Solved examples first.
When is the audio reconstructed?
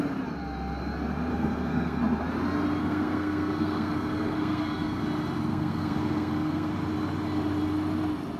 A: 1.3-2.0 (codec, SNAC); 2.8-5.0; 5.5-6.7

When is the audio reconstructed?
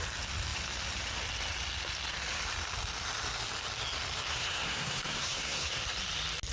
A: 4.3-5.8 (codec, SNAC)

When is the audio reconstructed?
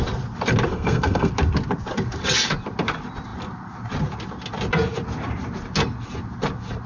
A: 0.7-1.3 (codec, SNAC)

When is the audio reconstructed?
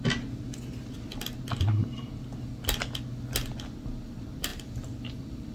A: none